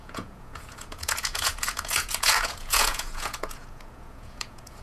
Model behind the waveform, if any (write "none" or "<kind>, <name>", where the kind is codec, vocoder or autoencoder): vocoder, Vocos